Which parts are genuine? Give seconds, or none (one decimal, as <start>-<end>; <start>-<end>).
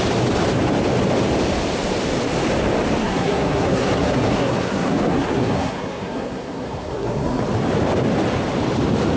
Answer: 0.0-3.0; 7.4-9.2